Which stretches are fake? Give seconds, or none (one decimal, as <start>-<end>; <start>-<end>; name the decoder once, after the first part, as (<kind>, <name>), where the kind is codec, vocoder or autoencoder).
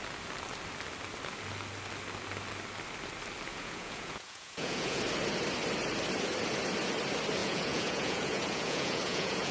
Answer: 3.5-5.0 (vocoder, Vocos); 7.4-9.5